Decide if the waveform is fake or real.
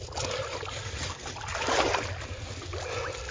real